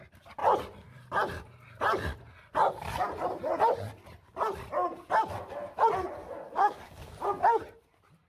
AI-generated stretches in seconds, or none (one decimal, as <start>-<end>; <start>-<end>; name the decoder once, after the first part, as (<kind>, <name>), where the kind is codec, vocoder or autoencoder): 6.2-7.2 (codec, DAC)